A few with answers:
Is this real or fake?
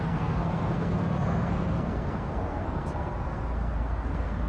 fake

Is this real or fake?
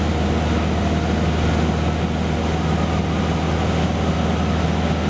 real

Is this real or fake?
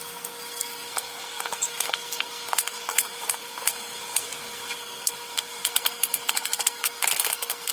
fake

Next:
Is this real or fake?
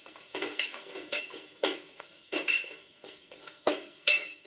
fake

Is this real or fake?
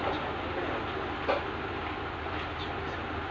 real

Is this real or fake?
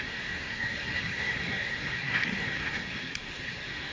fake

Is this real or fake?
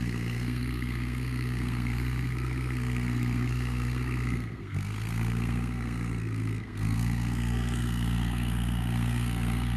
fake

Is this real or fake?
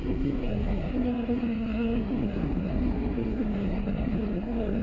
fake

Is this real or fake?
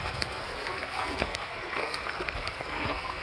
fake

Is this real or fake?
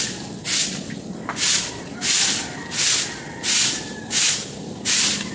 real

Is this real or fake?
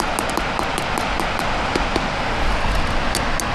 real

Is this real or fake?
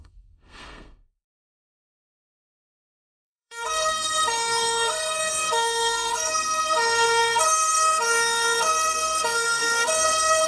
fake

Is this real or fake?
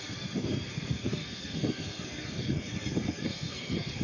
fake